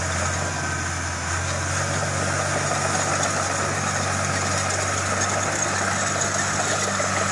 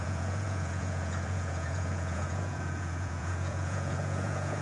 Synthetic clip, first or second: second